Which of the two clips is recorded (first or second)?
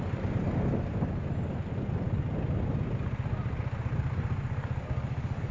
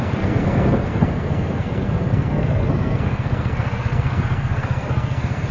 first